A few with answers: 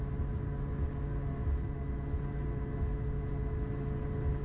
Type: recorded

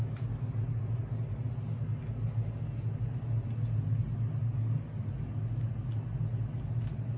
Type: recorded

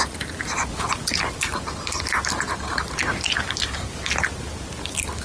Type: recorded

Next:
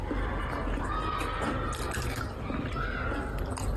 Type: recorded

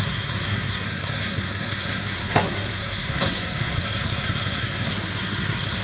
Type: remade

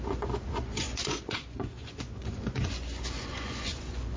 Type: remade